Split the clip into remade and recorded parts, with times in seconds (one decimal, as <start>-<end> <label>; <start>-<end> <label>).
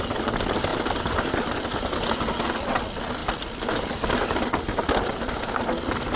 0.0-0.7 recorded; 0.7-2.0 remade; 2.0-3.2 recorded; 3.2-5.7 remade; 5.7-6.2 recorded